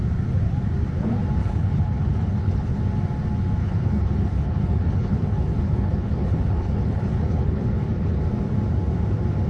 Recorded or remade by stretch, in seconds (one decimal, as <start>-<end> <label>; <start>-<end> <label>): 0.0-1.4 recorded; 1.4-2.8 remade; 2.8-3.6 recorded; 3.6-8.2 remade; 8.2-9.5 recorded